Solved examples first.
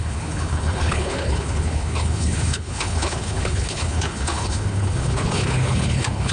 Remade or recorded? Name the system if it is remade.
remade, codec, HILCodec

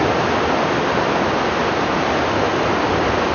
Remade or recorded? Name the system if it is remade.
recorded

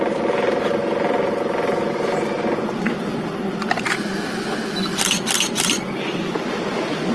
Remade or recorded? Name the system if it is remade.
recorded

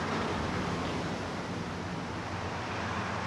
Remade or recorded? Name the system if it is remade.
recorded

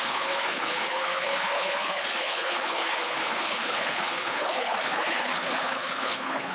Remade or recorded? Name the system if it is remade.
remade, codec, HILCodec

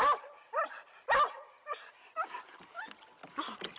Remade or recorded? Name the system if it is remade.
recorded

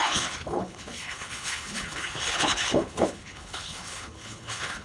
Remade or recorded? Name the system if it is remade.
remade, codec, HILCodec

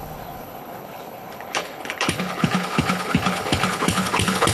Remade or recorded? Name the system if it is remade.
remade, codec, HILCodec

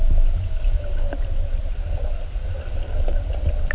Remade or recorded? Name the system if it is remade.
recorded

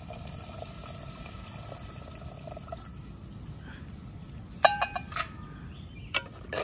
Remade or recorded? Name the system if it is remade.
recorded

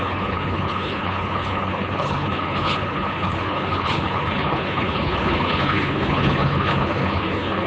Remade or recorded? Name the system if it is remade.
remade, codec, HILCodec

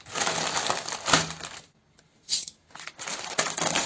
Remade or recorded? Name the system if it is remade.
recorded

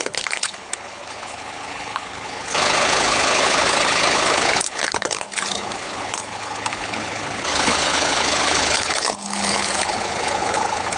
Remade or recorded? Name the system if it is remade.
remade, codec, HILCodec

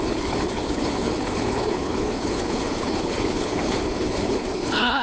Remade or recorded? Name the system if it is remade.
remade, codec, HILCodec